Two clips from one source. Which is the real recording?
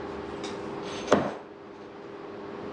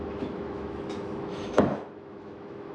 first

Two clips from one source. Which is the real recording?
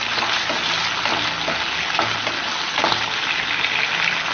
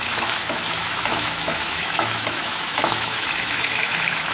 first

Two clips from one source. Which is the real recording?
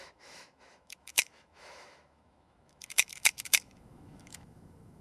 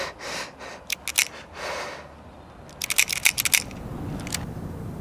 second